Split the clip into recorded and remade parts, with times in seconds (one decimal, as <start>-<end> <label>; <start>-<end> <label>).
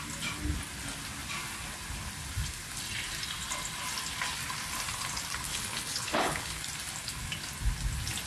0.0-5.5 recorded; 5.5-6.6 remade; 6.6-8.3 recorded